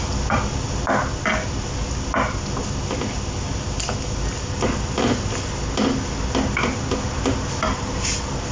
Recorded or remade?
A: recorded